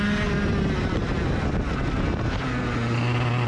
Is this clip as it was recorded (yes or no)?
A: yes